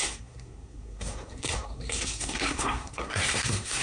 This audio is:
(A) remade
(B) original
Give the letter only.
A